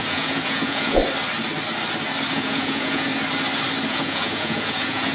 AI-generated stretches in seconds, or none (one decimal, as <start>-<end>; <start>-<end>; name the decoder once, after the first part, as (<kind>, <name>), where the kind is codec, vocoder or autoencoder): 0.0-1.0 (vocoder, Vocos); 2.3-3.1; 3.9-5.1